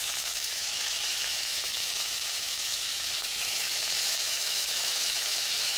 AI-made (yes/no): yes